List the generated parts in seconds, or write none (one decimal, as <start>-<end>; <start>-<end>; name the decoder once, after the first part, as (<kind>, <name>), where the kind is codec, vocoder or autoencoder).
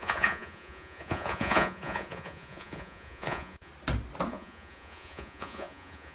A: 0.0-3.7 (vocoder, Vocos); 4.3-6.1